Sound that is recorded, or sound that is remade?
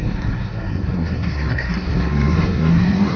remade